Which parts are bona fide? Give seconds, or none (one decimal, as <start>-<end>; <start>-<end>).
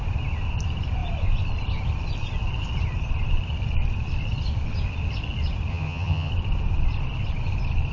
0.0-5.7; 6.3-7.9